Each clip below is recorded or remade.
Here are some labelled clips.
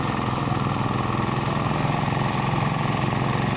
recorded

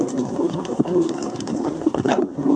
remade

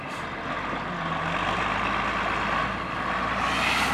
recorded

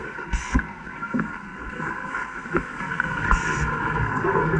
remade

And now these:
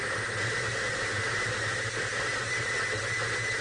recorded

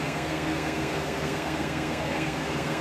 remade